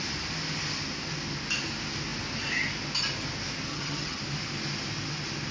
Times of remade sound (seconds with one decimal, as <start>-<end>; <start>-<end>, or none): 3.7-4.2